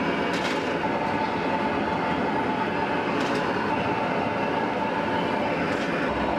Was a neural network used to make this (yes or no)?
no